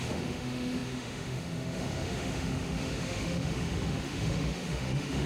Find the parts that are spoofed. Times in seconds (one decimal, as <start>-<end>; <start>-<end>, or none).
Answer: 0.0-5.3